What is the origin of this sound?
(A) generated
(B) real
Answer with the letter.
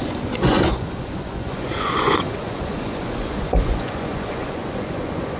A